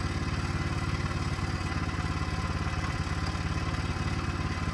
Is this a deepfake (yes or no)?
no